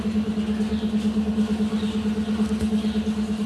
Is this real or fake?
real